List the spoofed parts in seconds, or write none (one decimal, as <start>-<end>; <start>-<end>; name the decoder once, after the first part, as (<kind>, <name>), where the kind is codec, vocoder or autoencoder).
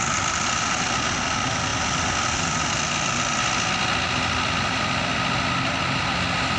none